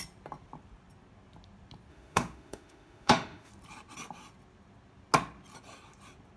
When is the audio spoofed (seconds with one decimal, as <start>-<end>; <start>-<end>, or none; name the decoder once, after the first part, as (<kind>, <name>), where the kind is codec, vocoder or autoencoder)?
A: 1.9-3.5 (autoencoder, DAC-VAE)